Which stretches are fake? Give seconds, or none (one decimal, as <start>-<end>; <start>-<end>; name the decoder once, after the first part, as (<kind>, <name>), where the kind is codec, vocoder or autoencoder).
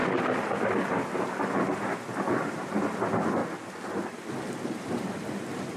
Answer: none